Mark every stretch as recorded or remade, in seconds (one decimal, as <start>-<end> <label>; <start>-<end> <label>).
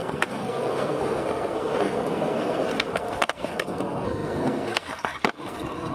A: 0.0-5.9 remade